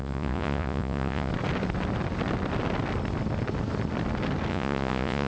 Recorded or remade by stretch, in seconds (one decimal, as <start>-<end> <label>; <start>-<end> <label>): 0.0-1.3 remade; 1.3-4.5 recorded; 4.5-5.3 remade